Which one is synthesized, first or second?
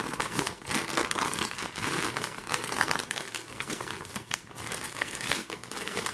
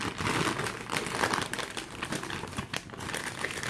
first